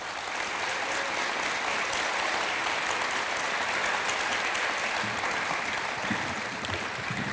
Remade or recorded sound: recorded